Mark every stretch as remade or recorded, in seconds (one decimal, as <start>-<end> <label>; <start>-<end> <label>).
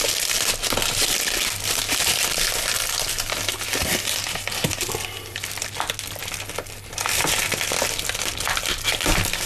0.0-9.5 recorded